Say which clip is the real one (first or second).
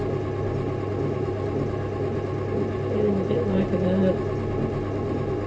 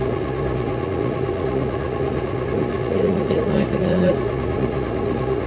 first